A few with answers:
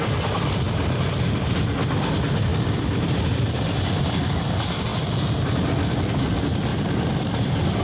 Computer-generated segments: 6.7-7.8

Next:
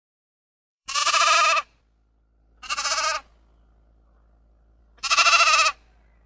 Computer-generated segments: 0.0-1.0; 4.8-5.2

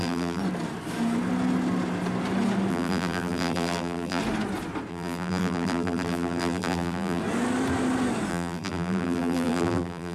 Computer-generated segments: 0.0-0.4; 2.7-4.2; 4.9-7.2; 8.3-10.1

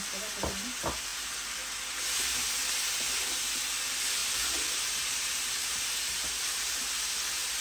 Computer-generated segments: 4.2-5.8

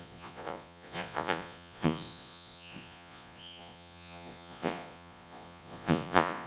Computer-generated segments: 0.0-6.5

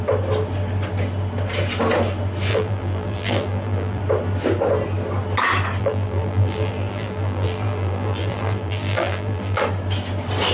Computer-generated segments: 2.5-4.0; 5.8-9.6

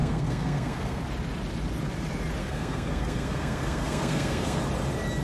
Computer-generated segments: 0.0-1.0; 2.4-4.6